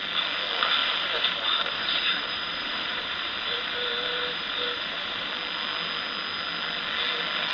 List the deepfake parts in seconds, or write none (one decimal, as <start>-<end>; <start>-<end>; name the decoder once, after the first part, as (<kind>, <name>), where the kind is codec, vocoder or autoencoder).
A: 0.8-5.3 (vocoder, BigVGAN v2)

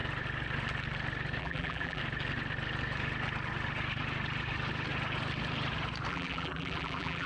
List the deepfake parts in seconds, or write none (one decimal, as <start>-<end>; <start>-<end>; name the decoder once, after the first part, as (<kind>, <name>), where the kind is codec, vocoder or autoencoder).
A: 1.4-2.0 (vocoder, BigVGAN v2); 6.1-7.3